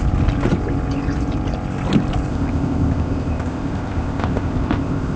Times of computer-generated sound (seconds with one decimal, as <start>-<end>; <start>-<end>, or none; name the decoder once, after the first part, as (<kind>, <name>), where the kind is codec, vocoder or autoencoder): 2.3-5.2 (codec, ZipCodec)